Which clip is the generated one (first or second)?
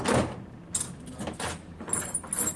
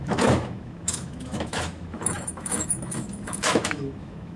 second